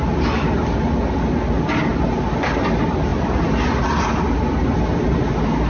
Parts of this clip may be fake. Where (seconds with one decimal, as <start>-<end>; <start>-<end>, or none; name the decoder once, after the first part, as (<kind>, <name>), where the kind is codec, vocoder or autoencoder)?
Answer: none